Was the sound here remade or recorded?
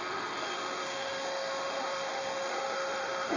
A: remade